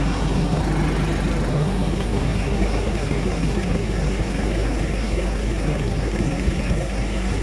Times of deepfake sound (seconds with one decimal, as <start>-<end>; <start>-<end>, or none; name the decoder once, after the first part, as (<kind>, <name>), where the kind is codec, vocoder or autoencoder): 0.0-0.6 (codec, SNAC); 1.5-7.4